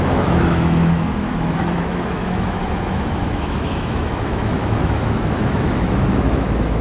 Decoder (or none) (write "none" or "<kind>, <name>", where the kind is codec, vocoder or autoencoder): autoencoder, DAC-VAE